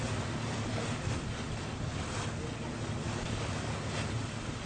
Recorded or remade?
recorded